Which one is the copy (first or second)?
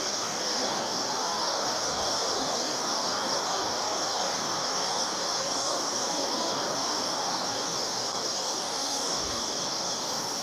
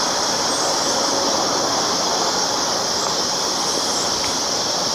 first